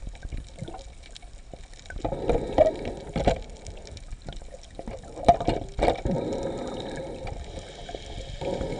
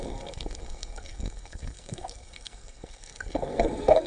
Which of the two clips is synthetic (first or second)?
second